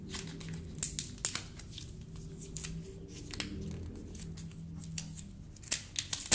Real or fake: real